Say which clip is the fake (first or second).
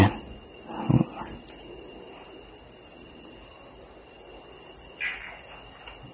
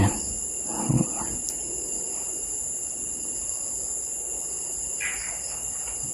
second